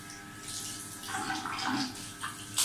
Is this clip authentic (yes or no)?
yes